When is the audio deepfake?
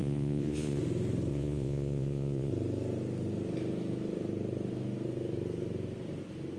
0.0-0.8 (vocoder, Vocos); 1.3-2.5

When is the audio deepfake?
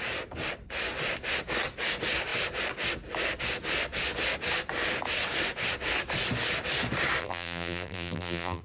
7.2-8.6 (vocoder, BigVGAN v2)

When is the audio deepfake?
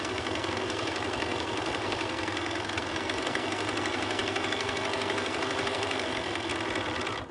0.0-6.5 (codec, SNAC)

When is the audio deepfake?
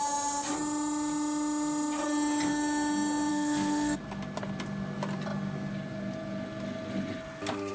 3.3-4.0 (codec, SNAC)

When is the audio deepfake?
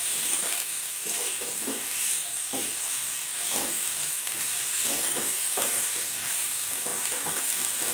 0.0-7.9 (codec, DAC)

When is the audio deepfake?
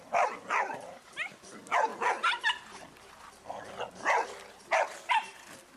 1.9-3.0 (vocoder, BigVGAN v2)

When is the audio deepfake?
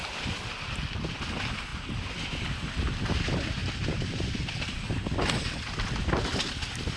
none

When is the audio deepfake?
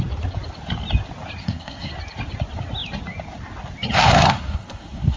1.4-1.9 (codec, SNAC); 4.0-5.2